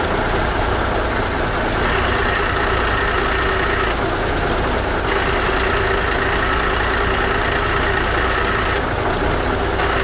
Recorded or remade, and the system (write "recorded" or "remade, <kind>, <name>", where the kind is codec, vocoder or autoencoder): recorded